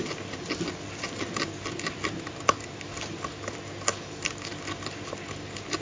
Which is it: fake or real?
real